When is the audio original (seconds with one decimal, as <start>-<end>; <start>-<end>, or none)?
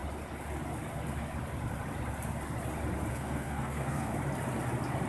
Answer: 0.0-3.1; 4.1-5.1